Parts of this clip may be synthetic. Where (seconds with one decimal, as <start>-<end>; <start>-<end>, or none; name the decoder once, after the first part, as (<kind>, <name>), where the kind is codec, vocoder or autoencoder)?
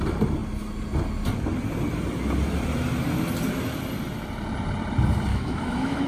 5.3-6.1 (autoencoder, DAC-VAE)